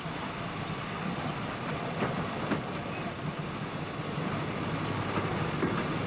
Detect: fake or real real